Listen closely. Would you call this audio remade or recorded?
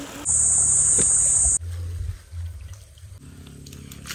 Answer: recorded